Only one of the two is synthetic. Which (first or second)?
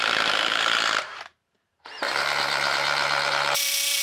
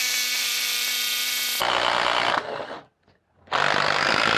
first